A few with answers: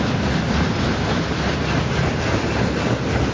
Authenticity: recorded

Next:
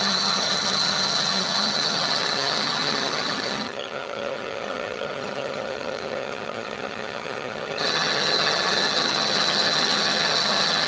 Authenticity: remade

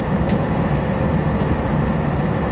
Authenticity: recorded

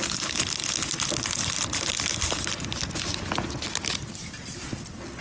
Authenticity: recorded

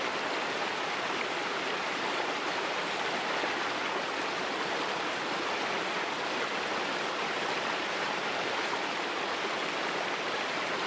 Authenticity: recorded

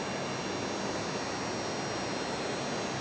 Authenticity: recorded